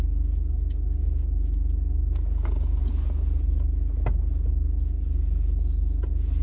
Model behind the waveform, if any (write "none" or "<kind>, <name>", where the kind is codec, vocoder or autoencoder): none